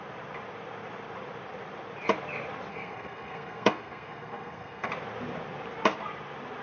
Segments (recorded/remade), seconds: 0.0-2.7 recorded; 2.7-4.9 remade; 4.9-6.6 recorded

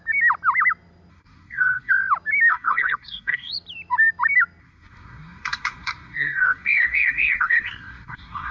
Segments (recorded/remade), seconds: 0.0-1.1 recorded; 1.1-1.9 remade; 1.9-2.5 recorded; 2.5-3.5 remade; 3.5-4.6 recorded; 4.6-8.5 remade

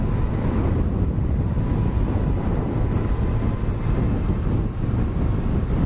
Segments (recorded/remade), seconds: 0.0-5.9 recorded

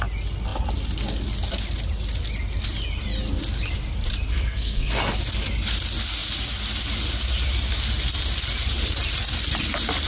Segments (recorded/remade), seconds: 0.0-4.3 recorded; 4.3-4.9 remade; 4.9-10.1 recorded